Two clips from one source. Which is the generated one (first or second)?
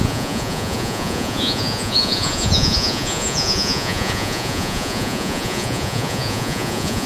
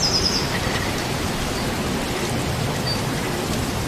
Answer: first